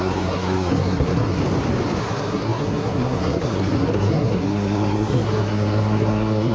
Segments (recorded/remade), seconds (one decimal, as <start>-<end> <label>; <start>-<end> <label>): 0.0-1.4 remade; 1.4-2.0 recorded; 2.0-6.5 remade